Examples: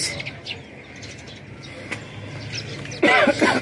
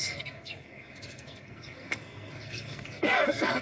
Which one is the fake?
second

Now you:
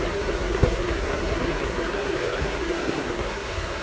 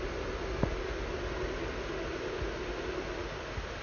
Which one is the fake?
first